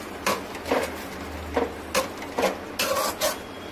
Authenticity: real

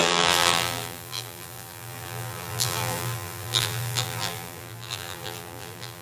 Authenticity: fake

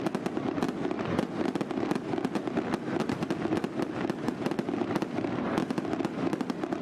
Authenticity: real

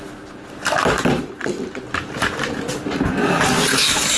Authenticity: real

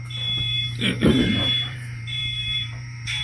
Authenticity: fake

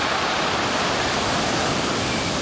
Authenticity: fake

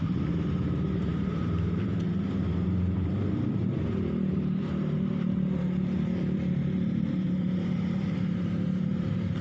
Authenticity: fake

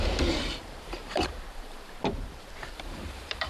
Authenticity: fake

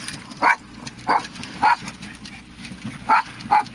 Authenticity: real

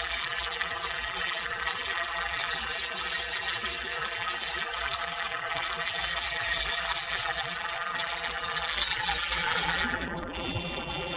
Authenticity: fake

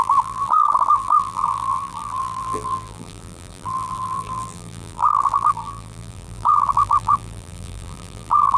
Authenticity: fake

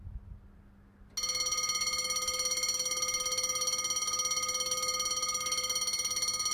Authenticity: real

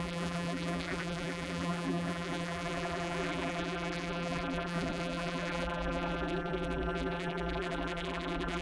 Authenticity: fake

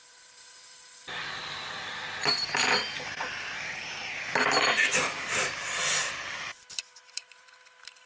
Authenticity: fake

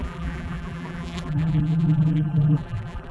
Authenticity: fake